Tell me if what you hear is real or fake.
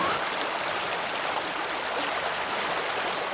real